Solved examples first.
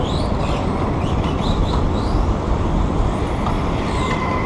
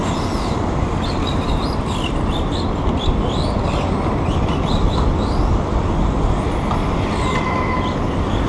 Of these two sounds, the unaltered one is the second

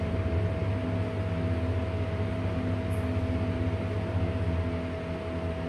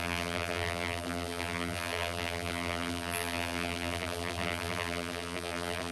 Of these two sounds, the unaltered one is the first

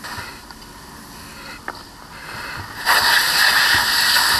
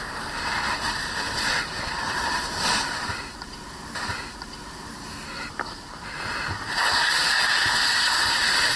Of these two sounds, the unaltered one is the first